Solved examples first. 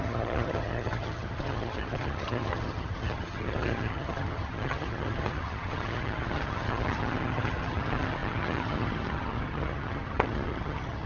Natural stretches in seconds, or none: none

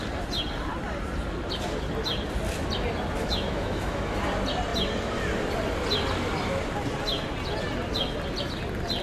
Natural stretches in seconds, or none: 0.0-3.2; 4.2-9.0

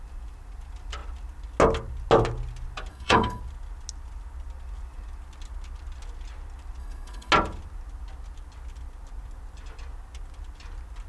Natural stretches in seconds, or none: 0.0-2.9; 3.4-6.8; 7.3-11.1

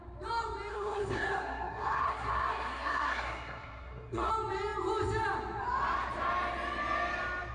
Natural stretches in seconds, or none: 0.0-0.7; 4.3-7.5

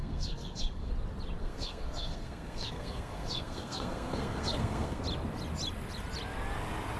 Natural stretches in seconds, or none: 0.9-1.4; 5.0-7.0